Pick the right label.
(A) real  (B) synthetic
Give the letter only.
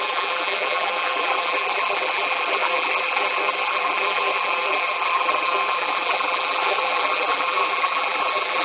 B